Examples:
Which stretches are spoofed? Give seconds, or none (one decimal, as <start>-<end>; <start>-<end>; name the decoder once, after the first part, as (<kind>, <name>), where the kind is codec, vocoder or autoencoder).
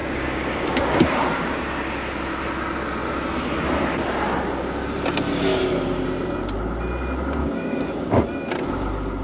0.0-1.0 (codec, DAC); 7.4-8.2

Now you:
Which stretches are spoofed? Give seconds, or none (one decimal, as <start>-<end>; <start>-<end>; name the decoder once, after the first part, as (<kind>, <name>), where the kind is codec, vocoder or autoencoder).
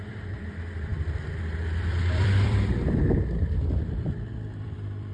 0.0-5.1 (vocoder, BigVGAN v2)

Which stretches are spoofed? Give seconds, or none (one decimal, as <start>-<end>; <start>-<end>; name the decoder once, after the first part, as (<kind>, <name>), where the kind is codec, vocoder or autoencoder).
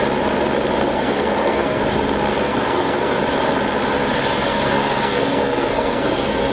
0.9-1.8 (codec, SNAC); 2.3-3.2; 4.5-6.5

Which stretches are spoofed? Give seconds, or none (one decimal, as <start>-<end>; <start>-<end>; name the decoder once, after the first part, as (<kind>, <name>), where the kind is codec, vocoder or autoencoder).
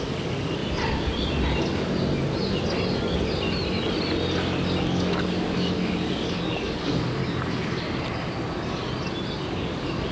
0.0-0.6 (codec, DAC); 4.8-7.2; 9.5-10.1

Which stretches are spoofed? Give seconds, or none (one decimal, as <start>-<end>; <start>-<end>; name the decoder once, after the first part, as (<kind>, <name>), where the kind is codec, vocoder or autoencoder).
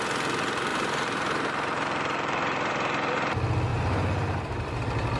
0.7-2.7 (vocoder, BigVGAN v2); 3.7-4.8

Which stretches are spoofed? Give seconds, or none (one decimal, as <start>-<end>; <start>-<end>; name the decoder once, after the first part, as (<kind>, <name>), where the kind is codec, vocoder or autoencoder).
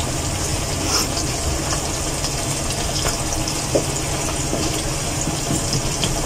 none